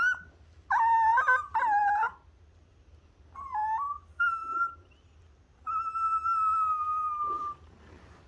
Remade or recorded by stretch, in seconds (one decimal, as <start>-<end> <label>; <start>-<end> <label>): 0.0-4.4 recorded; 4.4-5.2 remade; 5.2-6.5 recorded; 6.5-8.3 remade